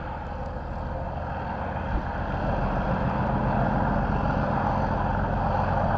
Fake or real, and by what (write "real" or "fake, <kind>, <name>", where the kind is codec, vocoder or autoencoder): real